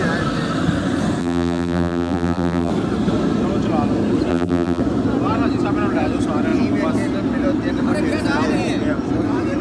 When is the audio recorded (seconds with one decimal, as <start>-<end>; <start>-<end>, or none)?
0.0-1.2; 2.7-4.3; 4.8-9.6